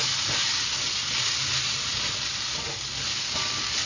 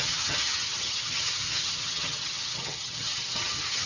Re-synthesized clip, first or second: second